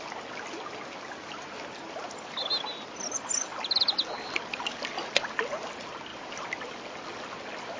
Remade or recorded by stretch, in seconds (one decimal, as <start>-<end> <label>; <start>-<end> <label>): 0.0-7.8 recorded